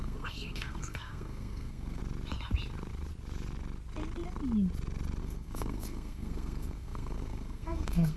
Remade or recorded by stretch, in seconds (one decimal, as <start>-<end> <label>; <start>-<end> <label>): 0.0-2.0 remade; 2.0-5.2 recorded; 5.2-8.2 remade